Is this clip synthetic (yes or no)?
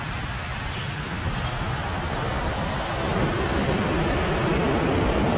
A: no